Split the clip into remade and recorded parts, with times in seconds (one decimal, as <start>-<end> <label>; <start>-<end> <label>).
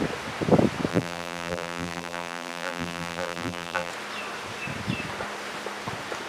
0.0-0.9 recorded; 0.9-3.9 remade; 3.9-6.3 recorded